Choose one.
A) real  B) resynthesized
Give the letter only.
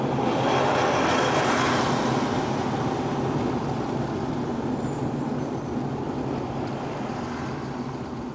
A